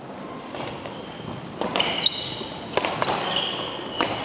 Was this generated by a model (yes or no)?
no